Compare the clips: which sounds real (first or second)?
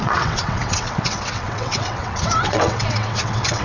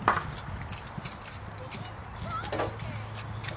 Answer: second